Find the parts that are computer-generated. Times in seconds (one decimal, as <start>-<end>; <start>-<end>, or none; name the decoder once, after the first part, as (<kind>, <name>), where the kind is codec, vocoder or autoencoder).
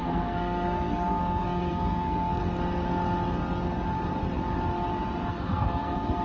0.0-2.4 (codec, SNAC); 5.3-6.2